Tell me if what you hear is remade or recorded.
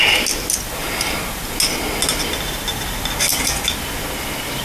recorded